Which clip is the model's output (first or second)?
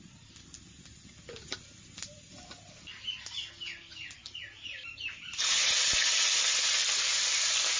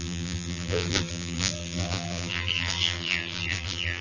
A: second